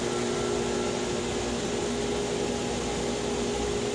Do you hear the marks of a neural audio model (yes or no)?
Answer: no